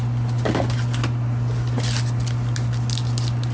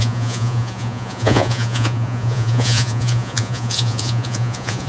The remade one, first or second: second